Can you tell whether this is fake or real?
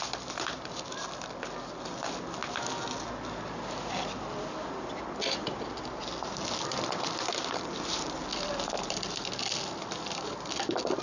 real